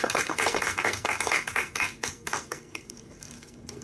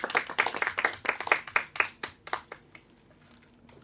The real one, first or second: second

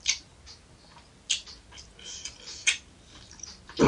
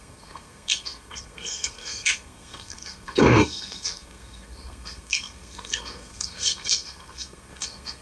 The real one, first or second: first